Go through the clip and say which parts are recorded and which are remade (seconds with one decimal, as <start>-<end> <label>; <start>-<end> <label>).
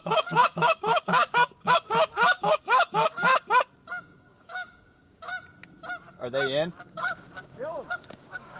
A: 0.0-3.3 remade; 3.3-3.9 recorded; 3.9-5.3 remade; 5.3-6.9 recorded; 6.9-8.6 remade